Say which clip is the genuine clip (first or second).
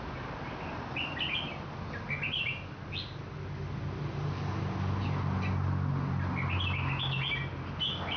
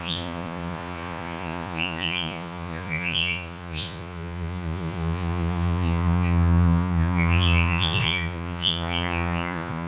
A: first